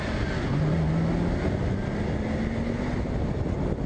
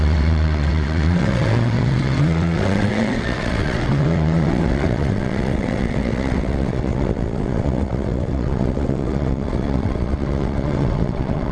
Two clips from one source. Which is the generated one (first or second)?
second